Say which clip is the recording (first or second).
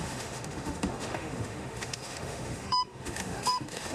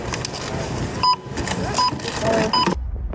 second